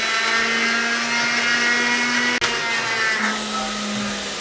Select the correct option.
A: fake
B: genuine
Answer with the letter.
B